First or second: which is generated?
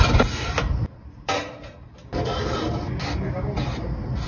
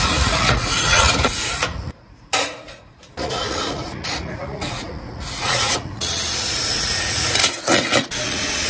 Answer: second